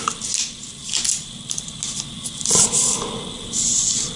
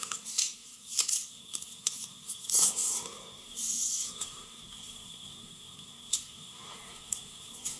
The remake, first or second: second